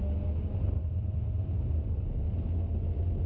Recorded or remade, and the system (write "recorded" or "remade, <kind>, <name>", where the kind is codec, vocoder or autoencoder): recorded